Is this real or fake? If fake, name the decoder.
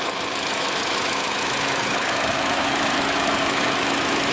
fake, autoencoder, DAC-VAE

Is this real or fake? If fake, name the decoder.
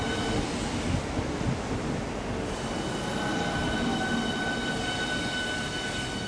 real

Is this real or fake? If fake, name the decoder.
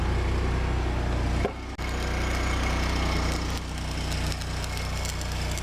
real